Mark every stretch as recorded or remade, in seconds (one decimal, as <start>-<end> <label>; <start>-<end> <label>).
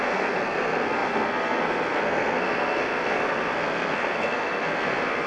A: 0.0-5.3 remade